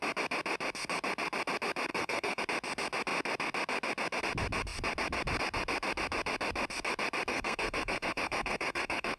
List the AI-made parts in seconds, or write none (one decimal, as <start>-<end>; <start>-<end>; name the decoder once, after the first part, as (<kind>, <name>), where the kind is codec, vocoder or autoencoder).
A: 1.9-2.4 (codec, SNAC); 7.3-9.2